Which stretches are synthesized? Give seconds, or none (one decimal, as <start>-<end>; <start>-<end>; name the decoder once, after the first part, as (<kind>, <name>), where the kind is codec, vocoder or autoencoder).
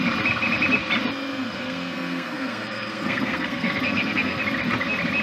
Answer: 1.3-4.4 (codec, SNAC)